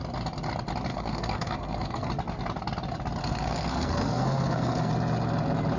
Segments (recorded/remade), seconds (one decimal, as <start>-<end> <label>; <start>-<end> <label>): 0.0-0.9 recorded; 0.9-2.1 remade; 2.1-3.2 recorded; 3.2-4.9 remade; 4.9-5.8 recorded